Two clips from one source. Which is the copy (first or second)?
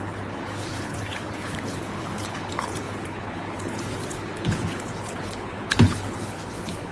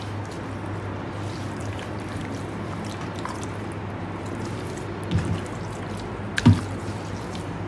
first